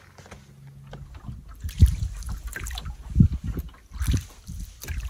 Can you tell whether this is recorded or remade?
recorded